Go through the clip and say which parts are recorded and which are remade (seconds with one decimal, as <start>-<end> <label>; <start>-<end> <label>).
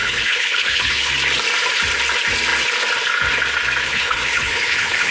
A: 0.0-1.1 remade; 1.1-3.8 recorded; 3.8-5.1 remade